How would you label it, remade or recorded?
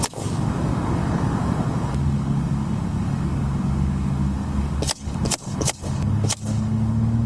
remade